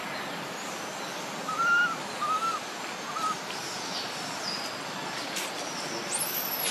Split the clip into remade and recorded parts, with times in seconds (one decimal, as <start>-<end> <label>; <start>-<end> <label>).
0.0-6.7 recorded